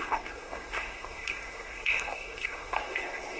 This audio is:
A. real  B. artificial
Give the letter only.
B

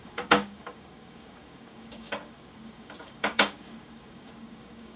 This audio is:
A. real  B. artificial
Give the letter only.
B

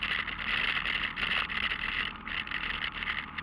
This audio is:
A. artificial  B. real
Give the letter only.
B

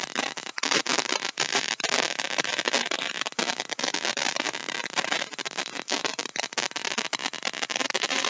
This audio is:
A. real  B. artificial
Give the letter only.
B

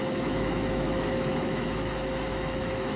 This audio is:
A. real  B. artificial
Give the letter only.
B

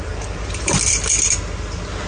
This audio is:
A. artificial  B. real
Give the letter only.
B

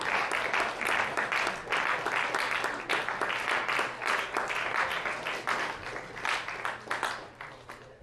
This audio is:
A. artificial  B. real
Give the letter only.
B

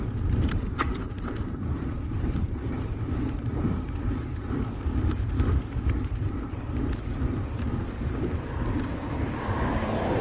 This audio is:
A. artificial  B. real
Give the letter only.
A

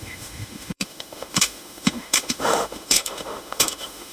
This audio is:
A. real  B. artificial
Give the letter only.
B